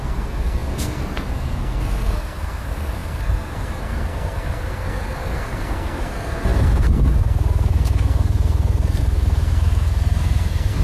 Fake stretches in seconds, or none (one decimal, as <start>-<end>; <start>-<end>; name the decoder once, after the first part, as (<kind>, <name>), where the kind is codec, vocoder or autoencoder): 0.0-10.8 (codec, SNAC)